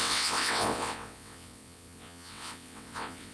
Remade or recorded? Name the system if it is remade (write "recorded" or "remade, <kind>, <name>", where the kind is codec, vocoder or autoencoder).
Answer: remade, vocoder, WaveNeXt